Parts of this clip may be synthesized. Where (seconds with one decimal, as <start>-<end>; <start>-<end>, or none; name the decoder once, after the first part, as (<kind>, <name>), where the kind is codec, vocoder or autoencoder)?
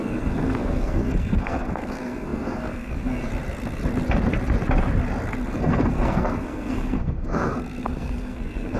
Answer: 0.0-3.3 (codec, SNAC); 5.5-8.8